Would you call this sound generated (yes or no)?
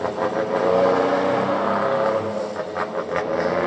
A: no